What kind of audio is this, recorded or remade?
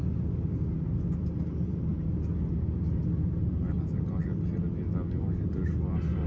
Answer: recorded